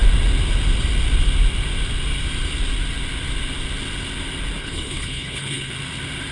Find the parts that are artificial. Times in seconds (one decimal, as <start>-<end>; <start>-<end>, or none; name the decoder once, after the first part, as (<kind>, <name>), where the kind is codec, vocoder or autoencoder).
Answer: 4.6-5.7 (codec, HILCodec)